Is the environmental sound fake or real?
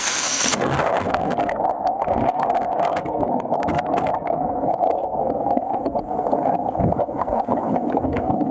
fake